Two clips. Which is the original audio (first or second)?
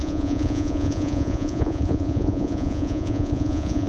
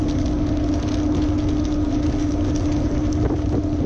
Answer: second